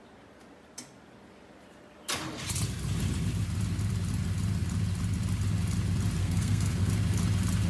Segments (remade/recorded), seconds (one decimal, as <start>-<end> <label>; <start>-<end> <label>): 0.0-6.2 recorded; 6.2-6.9 remade; 6.9-7.7 recorded

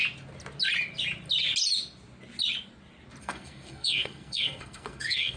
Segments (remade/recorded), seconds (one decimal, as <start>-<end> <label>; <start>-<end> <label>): 0.0-3.2 recorded; 3.2-5.4 remade

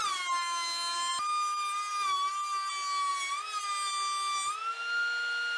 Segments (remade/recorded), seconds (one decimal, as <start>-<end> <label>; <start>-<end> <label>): 0.0-5.6 recorded

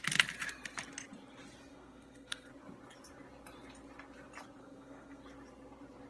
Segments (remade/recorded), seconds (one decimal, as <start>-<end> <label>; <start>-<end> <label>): 0.0-1.7 recorded; 1.7-2.5 remade; 2.5-4.6 recorded; 4.6-5.2 remade; 5.2-6.1 recorded

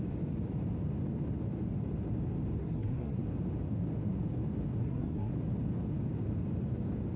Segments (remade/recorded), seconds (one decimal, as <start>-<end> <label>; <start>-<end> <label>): 0.0-2.6 recorded; 2.6-3.2 remade; 3.2-4.8 recorded; 4.8-5.3 remade; 5.3-7.2 recorded

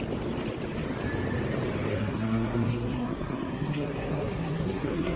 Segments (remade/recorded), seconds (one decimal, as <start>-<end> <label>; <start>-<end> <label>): 0.0-1.9 recorded; 1.9-5.2 remade